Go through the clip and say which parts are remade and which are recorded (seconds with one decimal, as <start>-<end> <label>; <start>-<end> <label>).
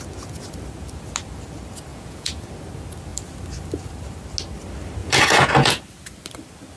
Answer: 0.0-1.9 recorded; 1.9-2.5 remade; 2.5-5.0 recorded; 5.0-5.8 remade; 5.8-6.8 recorded